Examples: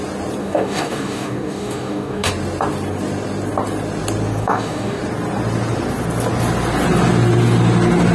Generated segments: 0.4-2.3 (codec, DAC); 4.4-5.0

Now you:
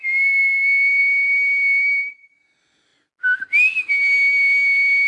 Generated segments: none

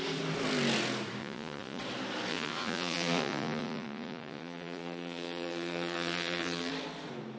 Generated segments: 1.2-1.8 (vocoder, Vocos); 2.3-6.7

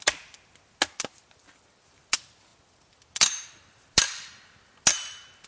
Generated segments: none

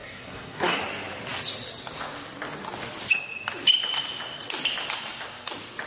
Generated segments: 0.0-0.8 (codec, SNAC)